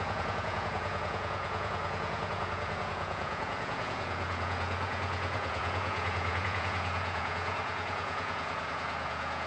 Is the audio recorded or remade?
remade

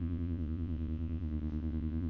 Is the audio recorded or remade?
remade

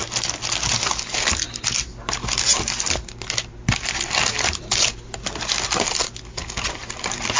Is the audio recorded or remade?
recorded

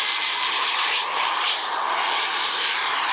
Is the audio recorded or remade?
remade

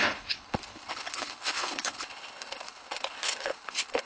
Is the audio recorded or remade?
remade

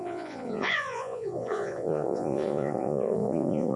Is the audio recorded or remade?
remade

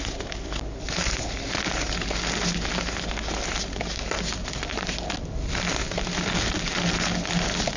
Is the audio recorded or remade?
recorded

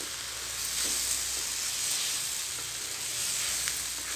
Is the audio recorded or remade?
recorded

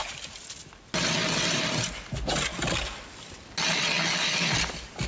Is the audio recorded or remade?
recorded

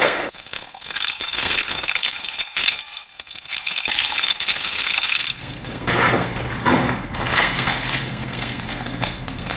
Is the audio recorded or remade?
remade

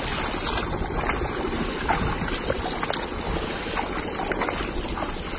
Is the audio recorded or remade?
recorded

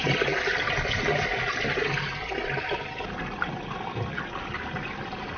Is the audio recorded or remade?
recorded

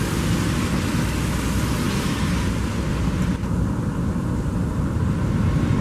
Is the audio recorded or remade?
recorded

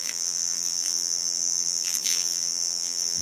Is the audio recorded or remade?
remade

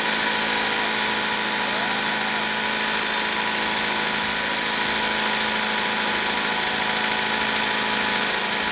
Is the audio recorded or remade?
recorded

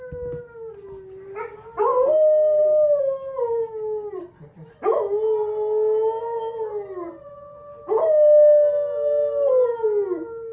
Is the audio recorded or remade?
recorded